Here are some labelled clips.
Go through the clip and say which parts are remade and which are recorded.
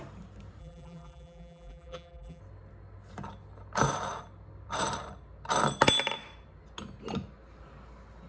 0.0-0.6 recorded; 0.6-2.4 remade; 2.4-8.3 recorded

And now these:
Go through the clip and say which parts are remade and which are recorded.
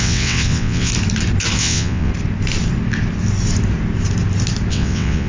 0.0-0.9 remade; 0.9-1.6 recorded; 1.6-2.1 remade; 2.1-4.7 recorded; 4.7-5.3 remade